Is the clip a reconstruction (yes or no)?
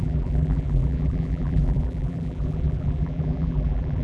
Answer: yes